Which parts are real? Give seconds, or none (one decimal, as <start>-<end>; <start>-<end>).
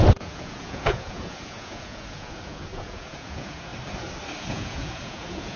3.7-4.4